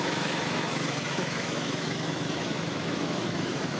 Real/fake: fake